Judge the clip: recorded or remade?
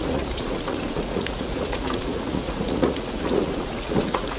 remade